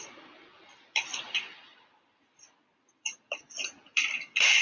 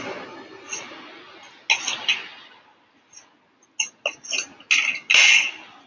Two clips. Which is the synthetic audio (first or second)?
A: first